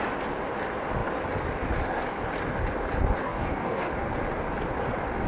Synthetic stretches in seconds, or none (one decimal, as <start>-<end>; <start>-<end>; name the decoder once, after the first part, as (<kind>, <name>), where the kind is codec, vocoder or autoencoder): 3.2-3.9 (codec, DAC)